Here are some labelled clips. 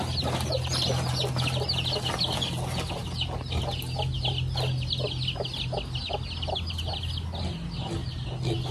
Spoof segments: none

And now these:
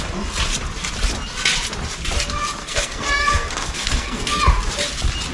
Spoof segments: 2.6-4.4 (codec, SNAC)

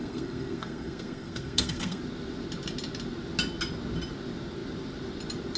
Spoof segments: 0.0-2.0 (codec, SNAC)

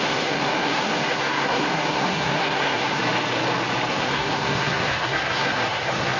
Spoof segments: 0.0-3.0 (codec, SNAC); 3.9-6.2

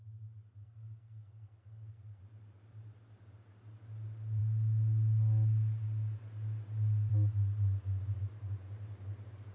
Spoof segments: 0.6-2.2 (codec, SNAC)

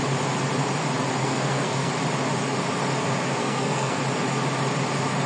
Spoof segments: 1.2-1.9 (codec, SNAC); 3.4-4.0

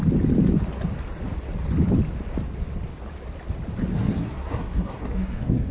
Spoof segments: 3.9-5.7 (codec, SNAC)